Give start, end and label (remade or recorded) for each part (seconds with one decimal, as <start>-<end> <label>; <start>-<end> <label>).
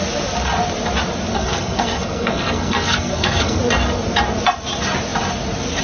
0.0-1.3 recorded; 1.3-3.6 remade; 3.6-5.8 recorded